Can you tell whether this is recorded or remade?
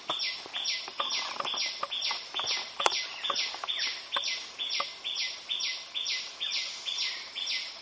recorded